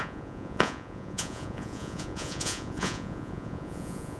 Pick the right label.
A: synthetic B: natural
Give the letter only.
A